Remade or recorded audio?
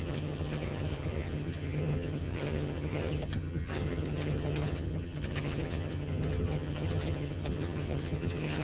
remade